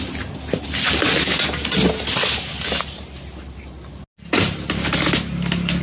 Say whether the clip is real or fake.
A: real